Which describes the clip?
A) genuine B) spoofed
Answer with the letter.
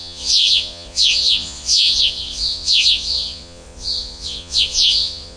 B